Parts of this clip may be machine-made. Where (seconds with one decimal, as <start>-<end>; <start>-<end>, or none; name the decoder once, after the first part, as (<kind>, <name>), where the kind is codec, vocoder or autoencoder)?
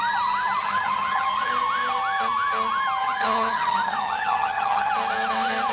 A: 0.6-1.5 (vocoder, HiFi-GAN); 3.0-4.9